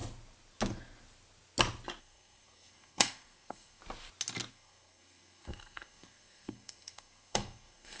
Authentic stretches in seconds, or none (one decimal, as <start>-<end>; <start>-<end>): 0.0-2.0; 3.8-4.5